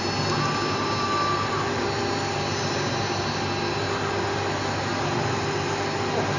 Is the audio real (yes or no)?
yes